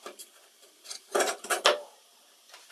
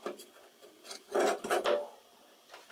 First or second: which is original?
second